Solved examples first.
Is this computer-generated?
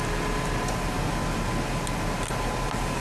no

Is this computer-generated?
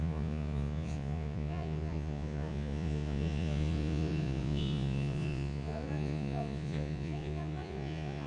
yes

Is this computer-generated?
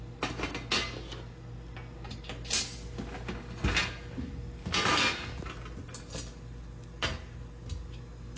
no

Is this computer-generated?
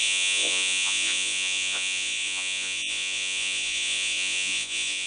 yes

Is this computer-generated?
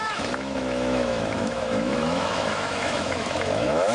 yes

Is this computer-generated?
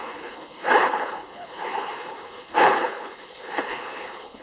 yes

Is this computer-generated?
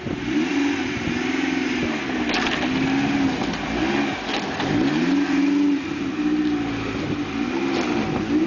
no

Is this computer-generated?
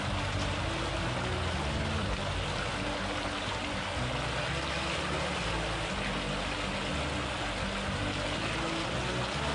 no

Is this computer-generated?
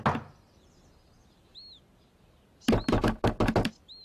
no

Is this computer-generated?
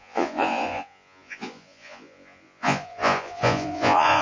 yes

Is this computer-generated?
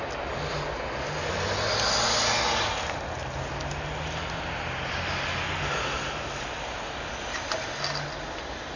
no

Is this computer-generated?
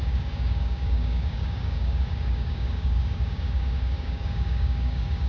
yes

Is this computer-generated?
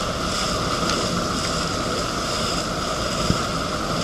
no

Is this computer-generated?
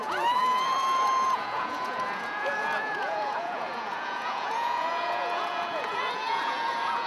yes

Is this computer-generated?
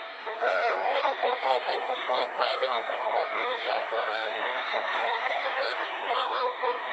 yes